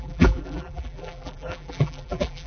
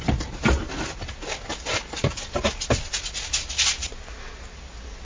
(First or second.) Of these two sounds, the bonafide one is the second